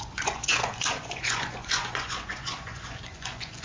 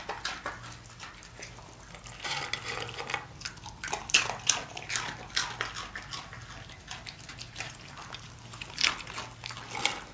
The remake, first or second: first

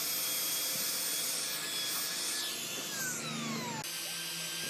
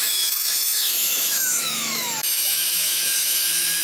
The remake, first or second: second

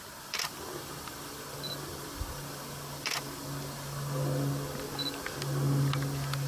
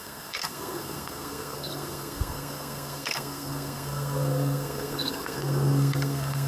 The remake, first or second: second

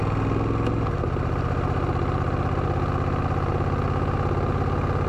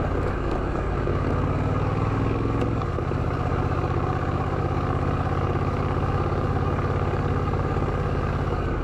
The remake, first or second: second